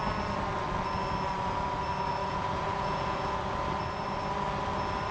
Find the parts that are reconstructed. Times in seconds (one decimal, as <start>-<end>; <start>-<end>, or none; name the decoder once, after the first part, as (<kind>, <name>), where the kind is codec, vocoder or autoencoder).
2.2-3.4 (vocoder, Vocos)